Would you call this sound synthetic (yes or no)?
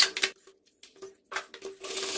no